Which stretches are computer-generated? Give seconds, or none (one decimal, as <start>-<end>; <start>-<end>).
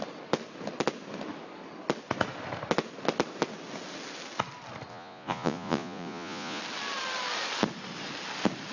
4.9-6.6